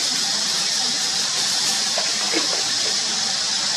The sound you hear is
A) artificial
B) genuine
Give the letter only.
B